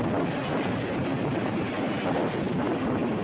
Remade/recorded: recorded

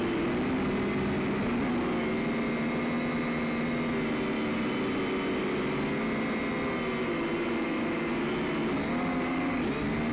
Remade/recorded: recorded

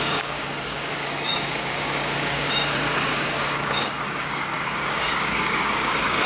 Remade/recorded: remade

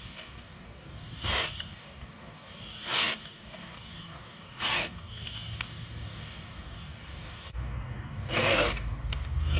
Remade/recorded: remade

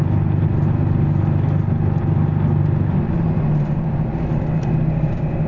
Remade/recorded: recorded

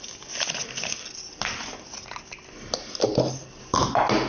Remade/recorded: recorded